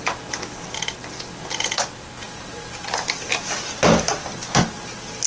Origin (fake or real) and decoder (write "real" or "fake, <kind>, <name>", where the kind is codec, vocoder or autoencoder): real